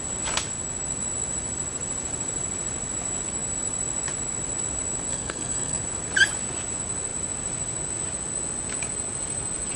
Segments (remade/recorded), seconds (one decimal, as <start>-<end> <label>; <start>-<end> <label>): 0.0-5.1 recorded; 5.1-5.8 remade; 5.8-9.8 recorded